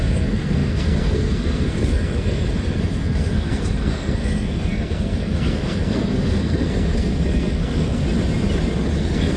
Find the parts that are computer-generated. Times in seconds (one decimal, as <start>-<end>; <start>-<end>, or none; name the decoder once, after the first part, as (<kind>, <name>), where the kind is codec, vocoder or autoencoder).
0.0-8.0 (codec, SNAC); 9.0-9.4